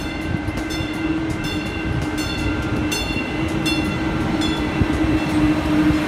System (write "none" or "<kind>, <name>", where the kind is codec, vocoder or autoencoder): none